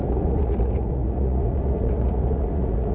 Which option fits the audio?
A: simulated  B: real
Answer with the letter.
A